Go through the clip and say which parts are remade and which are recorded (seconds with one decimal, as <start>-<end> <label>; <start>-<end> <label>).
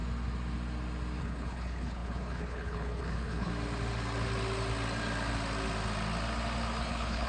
0.0-1.2 recorded; 1.2-3.5 remade; 3.5-6.8 recorded; 6.8-7.3 remade